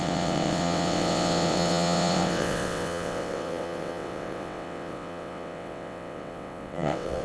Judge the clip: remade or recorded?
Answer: remade